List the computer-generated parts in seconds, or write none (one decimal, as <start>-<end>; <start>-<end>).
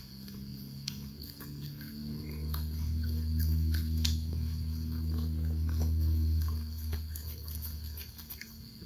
0.0-8.9